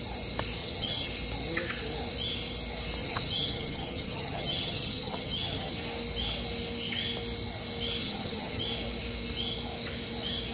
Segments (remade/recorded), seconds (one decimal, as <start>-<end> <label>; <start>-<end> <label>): 0.0-0.6 recorded; 0.6-1.1 remade; 1.1-3.0 recorded; 3.0-5.7 remade; 5.7-8.0 recorded; 8.0-8.6 remade; 8.6-10.5 recorded